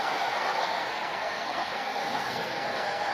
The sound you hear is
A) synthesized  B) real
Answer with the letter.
A